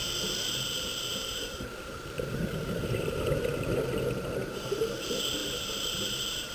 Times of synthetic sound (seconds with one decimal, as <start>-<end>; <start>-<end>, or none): none